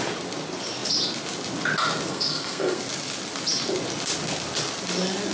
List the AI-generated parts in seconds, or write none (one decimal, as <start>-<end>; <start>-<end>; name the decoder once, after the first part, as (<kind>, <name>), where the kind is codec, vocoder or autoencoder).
2.1-2.8 (codec, SNAC)